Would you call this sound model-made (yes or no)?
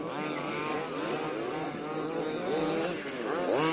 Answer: no